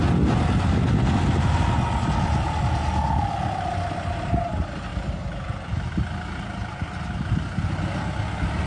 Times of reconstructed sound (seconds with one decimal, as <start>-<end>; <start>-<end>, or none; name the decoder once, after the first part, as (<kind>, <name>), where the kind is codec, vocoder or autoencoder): none